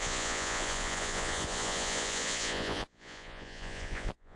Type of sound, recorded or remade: remade